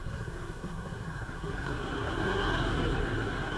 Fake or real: fake